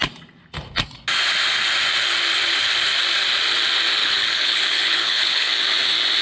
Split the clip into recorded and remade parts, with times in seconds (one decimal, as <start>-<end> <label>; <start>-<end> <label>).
0.0-4.0 recorded; 4.0-5.5 remade; 5.5-6.2 recorded